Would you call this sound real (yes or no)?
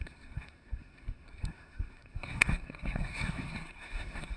no